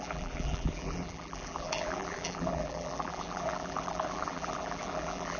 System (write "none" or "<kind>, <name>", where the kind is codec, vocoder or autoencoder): vocoder, BigVGAN v2